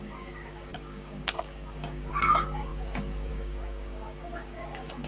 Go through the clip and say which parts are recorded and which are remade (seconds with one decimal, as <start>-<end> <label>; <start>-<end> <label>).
0.0-5.1 remade